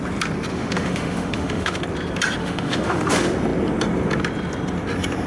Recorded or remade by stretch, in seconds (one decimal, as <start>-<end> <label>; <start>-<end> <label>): 0.0-0.5 recorded; 0.5-1.8 remade; 1.8-2.4 recorded; 2.4-3.1 remade; 3.1-5.3 recorded